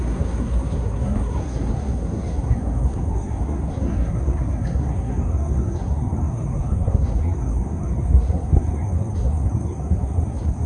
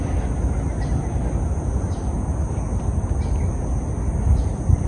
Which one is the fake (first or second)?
first